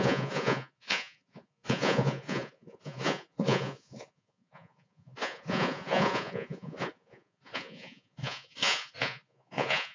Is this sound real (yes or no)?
no